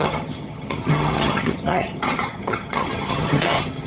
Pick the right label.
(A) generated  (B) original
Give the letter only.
A